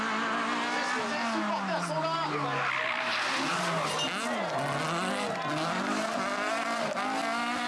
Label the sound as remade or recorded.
recorded